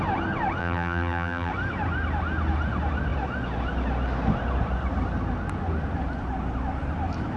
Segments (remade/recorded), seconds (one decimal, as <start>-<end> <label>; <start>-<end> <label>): 0.0-0.6 recorded; 0.6-1.5 remade; 1.5-7.4 recorded